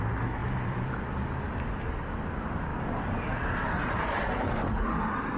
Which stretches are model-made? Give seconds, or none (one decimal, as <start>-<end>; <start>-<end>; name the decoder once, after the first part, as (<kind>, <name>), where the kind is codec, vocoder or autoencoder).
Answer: 0.4-2.3 (vocoder, BigVGAN v2)